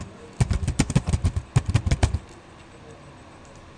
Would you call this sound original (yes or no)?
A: yes